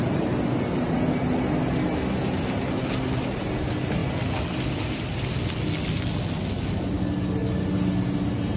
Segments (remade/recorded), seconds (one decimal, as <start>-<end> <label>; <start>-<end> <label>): 0.0-4.0 recorded; 4.0-5.6 remade; 5.6-8.6 recorded